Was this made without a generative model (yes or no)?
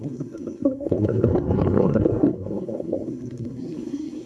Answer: no